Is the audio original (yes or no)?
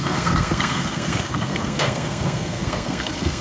no